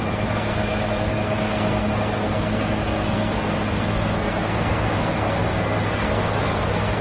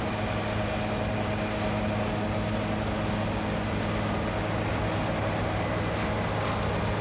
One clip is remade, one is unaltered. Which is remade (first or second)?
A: first